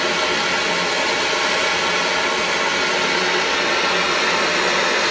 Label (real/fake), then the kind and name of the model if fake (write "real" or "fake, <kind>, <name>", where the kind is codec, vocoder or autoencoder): real